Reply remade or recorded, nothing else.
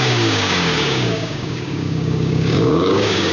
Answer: remade